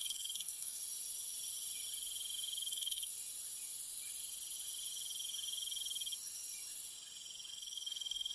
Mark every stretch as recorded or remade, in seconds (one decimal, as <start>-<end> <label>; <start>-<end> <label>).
0.0-0.8 remade; 0.8-2.7 recorded; 2.7-3.1 remade; 3.1-7.5 recorded; 7.5-8.3 remade